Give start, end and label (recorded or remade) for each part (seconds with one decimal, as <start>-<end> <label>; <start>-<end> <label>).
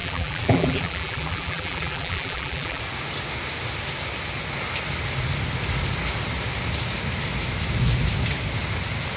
0.0-2.8 remade; 2.8-9.2 recorded